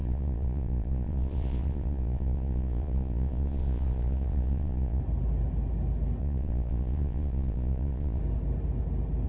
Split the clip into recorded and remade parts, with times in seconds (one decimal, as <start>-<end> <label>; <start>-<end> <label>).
0.0-5.0 remade; 5.0-6.2 recorded; 6.2-8.2 remade; 8.2-9.3 recorded